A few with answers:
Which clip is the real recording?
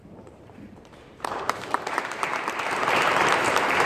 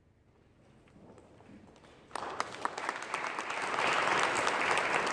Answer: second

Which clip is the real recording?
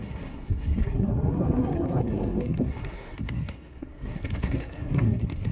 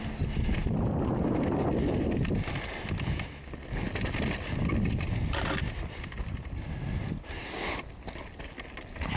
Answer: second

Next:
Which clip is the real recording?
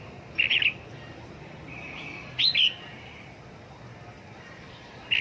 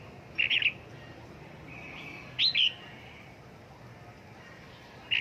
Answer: second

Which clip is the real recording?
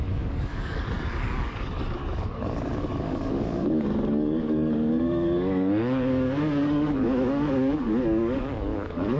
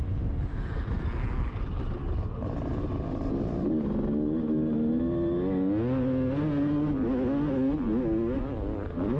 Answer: second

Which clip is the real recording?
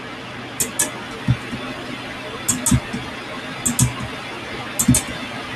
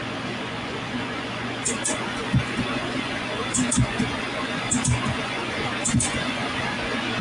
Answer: first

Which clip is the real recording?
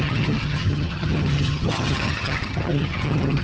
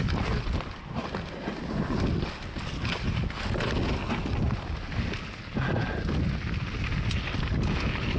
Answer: second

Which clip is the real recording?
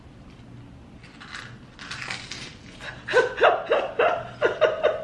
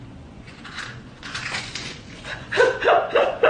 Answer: first